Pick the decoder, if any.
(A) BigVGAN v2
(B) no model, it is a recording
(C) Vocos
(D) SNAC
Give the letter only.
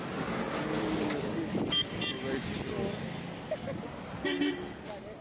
B